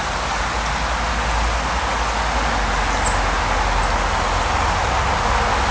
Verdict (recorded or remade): recorded